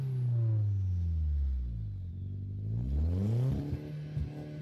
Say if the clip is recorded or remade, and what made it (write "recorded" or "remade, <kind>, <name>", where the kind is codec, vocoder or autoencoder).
recorded